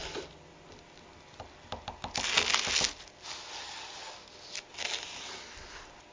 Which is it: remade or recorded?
recorded